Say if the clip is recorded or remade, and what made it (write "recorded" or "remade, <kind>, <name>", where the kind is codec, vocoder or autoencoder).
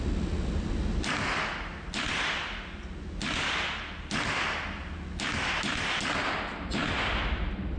recorded